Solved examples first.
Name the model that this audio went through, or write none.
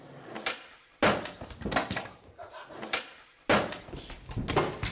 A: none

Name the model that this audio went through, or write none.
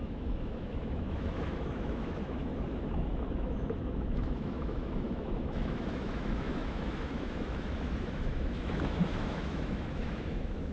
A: autoencoder, DAC-VAE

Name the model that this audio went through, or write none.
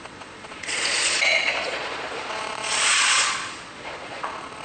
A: vocoder, Vocos